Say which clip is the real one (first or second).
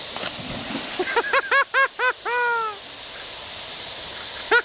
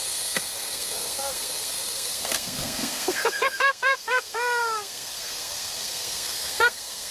first